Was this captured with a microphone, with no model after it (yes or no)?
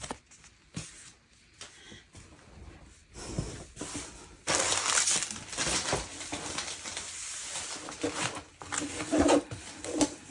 yes